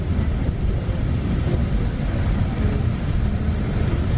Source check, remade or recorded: recorded